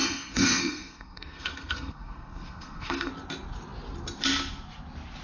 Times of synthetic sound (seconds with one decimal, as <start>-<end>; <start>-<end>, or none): 0.0-3.1